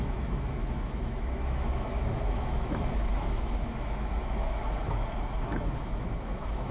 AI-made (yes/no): yes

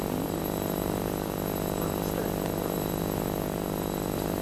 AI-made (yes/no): yes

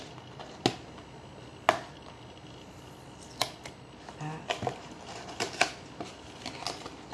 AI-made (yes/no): no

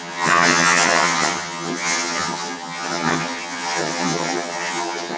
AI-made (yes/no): yes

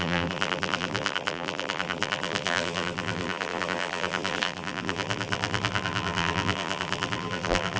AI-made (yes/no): yes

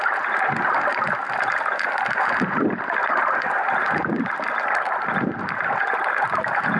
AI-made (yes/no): no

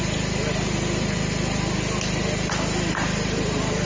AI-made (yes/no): no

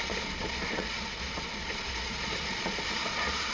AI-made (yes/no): yes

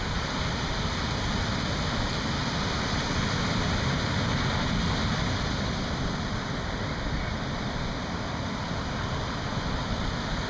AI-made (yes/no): no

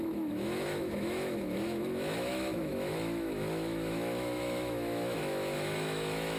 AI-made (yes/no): yes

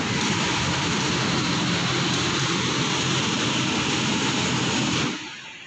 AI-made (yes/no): no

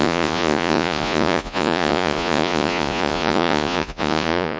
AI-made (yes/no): yes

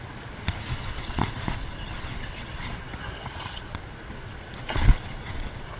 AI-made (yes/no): yes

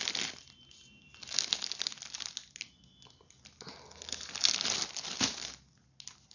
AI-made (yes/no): no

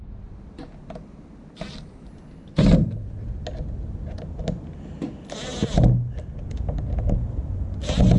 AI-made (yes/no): no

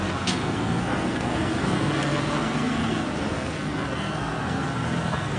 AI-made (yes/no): yes